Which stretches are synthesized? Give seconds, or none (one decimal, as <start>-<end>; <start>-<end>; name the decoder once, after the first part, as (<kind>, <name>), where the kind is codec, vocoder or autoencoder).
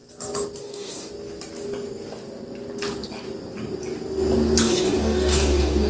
0.6-1.1 (codec, DAC); 4.6-5.9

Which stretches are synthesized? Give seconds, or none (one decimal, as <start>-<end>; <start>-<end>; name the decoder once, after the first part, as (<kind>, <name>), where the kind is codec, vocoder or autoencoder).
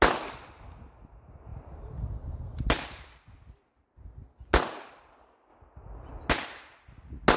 none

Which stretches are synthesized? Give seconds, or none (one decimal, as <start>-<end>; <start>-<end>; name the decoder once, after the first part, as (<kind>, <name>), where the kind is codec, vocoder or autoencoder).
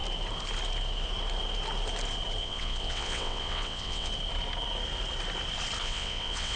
2.4-4.1 (vocoder, WaveNeXt); 5.8-6.6